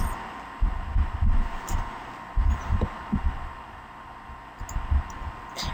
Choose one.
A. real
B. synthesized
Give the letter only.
A